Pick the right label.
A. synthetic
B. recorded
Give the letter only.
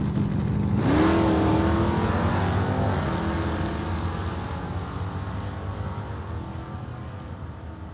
B